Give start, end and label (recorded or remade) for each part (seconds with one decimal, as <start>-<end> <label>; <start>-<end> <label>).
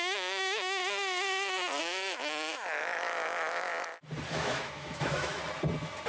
0.0-0.8 remade; 0.8-1.8 recorded; 1.8-3.7 remade; 3.7-4.3 recorded; 4.3-5.4 remade; 5.4-6.1 recorded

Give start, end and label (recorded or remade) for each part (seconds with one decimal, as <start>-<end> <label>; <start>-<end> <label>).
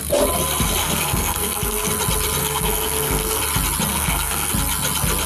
0.0-0.8 recorded; 0.8-1.9 remade; 1.9-2.4 recorded; 2.4-3.4 remade; 3.4-3.9 recorded; 3.9-4.5 remade; 4.5-5.3 recorded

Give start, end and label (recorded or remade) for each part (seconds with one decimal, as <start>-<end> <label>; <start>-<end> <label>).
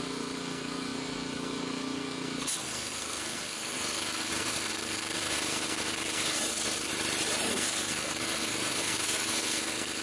0.0-6.9 remade; 6.9-7.5 recorded; 7.5-10.0 remade